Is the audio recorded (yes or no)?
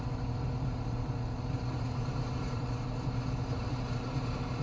no